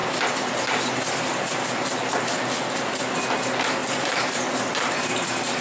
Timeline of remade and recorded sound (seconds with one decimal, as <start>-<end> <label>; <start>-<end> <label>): 0.0-3.8 recorded; 3.8-5.6 remade

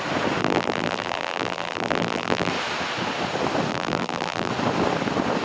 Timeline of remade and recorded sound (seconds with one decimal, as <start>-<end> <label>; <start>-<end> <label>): 0.0-0.4 recorded; 0.4-2.5 remade; 2.5-3.7 recorded; 3.7-4.5 remade; 4.5-5.4 recorded